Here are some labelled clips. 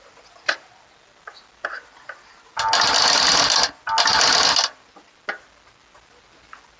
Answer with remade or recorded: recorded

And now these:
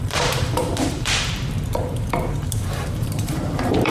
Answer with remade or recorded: remade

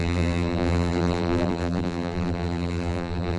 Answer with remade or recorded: remade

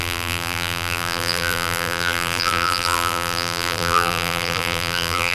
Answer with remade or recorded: remade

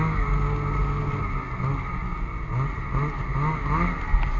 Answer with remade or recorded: recorded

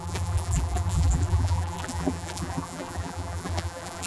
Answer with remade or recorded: remade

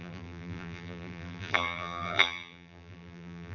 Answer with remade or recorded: remade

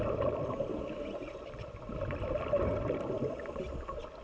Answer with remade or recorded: recorded